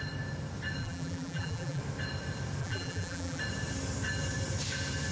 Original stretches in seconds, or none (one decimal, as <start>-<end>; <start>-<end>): 0.0-0.8; 1.8-2.6; 3.4-5.1